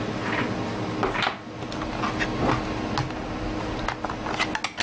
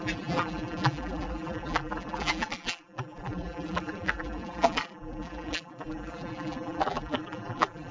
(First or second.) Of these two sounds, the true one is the first